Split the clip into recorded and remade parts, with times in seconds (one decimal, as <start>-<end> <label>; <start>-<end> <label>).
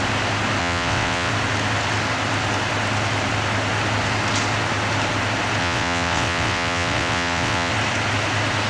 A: 0.0-0.6 recorded; 0.6-1.3 remade; 1.3-5.6 recorded; 5.6-7.7 remade; 7.7-8.7 recorded